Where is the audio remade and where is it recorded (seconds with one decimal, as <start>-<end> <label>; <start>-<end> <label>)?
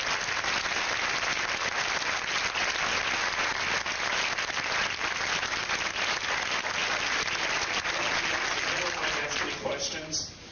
0.0-10.5 recorded